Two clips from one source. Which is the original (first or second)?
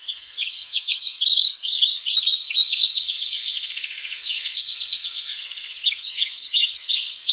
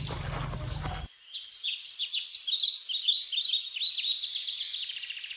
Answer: second